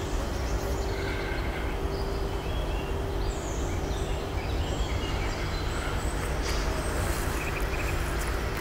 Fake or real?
real